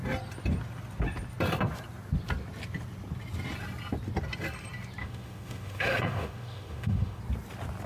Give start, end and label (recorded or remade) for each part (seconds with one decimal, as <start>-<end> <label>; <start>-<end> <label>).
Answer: 0.0-5.0 recorded; 5.0-7.2 remade; 7.2-7.9 recorded